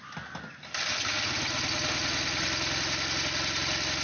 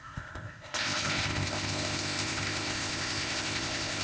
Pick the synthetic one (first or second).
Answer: second